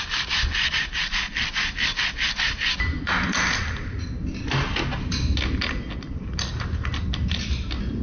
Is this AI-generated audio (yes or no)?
no